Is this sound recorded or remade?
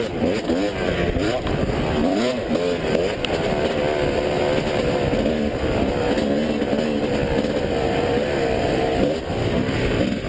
recorded